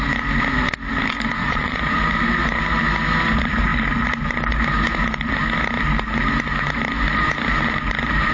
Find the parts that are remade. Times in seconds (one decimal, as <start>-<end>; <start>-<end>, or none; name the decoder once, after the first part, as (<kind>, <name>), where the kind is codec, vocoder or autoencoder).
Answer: 1.4-2.0 (vocoder, Vocos)